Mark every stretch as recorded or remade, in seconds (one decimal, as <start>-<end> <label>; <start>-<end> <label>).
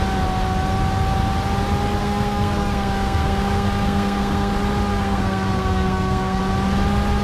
0.0-2.0 recorded; 2.0-4.5 remade; 4.5-4.9 recorded; 4.9-6.4 remade; 6.4-7.2 recorded